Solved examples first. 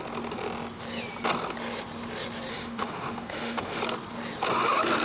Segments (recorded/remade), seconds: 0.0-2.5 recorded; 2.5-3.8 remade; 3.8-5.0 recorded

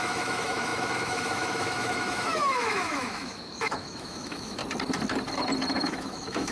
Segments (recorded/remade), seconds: 0.0-4.6 remade; 4.6-5.7 recorded; 5.7-6.5 remade

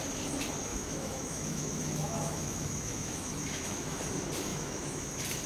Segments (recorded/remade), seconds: 0.0-0.7 recorded; 0.7-4.0 remade; 4.0-4.5 recorded; 4.5-5.1 remade; 5.1-5.5 recorded